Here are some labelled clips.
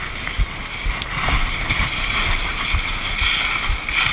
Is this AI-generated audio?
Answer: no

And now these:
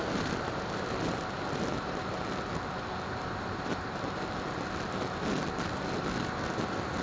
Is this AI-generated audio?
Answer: no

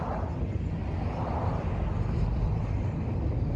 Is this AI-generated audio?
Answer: no